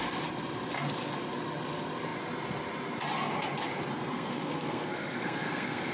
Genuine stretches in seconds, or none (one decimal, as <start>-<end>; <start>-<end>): 0.0-4.1